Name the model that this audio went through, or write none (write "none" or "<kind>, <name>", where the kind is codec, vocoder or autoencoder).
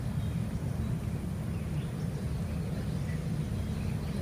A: none